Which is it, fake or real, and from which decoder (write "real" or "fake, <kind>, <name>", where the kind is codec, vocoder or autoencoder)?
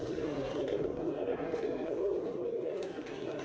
fake, codec, SNAC